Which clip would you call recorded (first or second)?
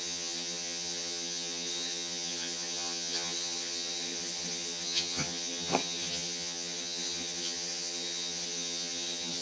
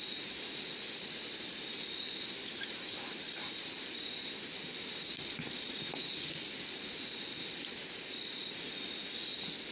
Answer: second